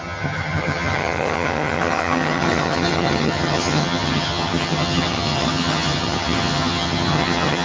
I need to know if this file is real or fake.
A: fake